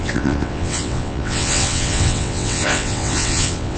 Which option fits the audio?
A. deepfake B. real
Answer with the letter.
A